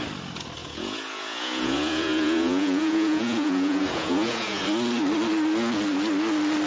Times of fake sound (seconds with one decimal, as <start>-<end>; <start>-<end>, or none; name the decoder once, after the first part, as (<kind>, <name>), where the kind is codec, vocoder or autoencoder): 0.6-4.6 (vocoder, Vocos)